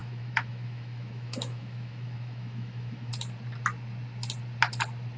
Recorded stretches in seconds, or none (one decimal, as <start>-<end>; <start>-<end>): 3.1-5.2